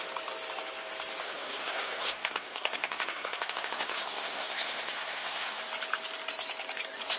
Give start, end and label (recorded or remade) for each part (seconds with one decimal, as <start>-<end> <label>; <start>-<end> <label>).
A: 0.0-1.2 recorded; 1.2-5.5 remade; 5.5-7.2 recorded